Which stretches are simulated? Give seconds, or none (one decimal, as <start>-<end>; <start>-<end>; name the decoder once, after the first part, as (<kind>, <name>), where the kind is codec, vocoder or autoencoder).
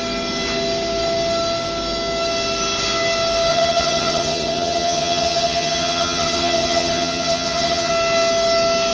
3.5-7.9 (vocoder, HiFi-GAN)